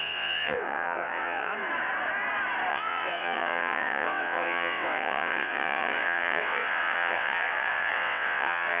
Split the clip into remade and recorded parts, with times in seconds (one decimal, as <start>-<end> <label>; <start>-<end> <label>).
0.0-1.5 remade; 1.5-2.7 recorded; 2.7-8.8 remade